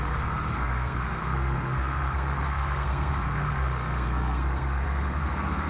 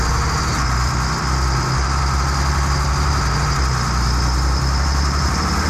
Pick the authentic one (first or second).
second